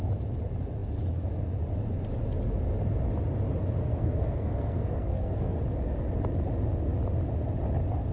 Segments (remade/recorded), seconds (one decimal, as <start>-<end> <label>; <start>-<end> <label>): 0.0-3.8 recorded; 3.8-5.6 remade; 5.6-8.1 recorded